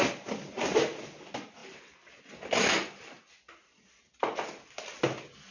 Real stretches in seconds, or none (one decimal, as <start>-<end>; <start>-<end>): 0.0-5.5